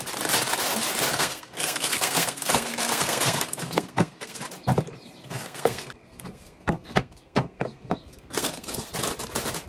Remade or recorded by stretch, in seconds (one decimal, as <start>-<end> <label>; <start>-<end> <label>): 0.0-1.1 recorded; 1.1-4.4 remade; 4.4-5.2 recorded; 5.2-8.9 remade; 8.9-9.7 recorded